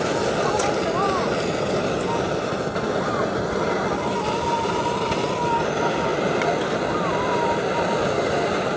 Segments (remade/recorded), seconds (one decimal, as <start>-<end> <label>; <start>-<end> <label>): 0.0-8.8 recorded